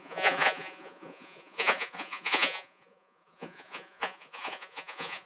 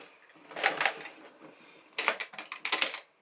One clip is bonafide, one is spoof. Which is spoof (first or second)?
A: first